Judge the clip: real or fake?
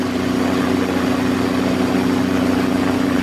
real